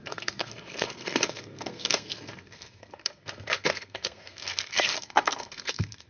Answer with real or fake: fake